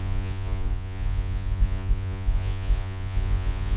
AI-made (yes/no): yes